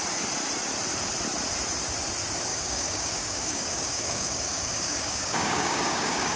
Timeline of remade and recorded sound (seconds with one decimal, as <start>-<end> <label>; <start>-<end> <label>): 0.0-2.5 recorded; 2.5-6.4 remade